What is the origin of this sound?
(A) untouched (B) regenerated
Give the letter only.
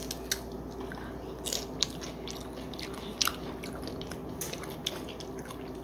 A